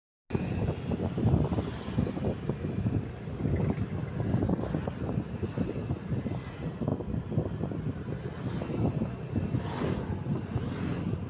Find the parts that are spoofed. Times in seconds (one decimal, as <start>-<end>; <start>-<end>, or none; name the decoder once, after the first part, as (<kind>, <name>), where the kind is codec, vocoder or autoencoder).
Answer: none